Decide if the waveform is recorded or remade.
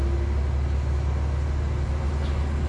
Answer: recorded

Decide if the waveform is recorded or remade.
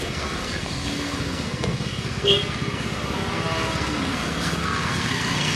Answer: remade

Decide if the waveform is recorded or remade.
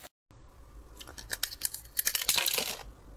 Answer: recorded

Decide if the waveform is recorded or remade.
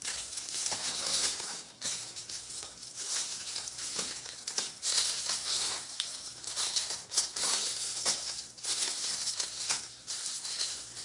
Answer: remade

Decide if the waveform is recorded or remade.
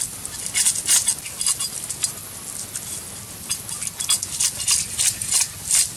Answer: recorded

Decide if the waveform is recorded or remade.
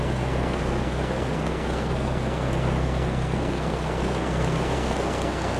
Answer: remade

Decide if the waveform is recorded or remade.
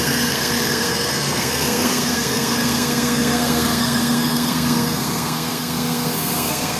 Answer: remade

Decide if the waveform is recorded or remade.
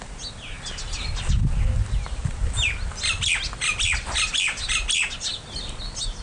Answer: recorded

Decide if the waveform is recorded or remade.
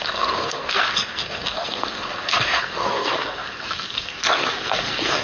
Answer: remade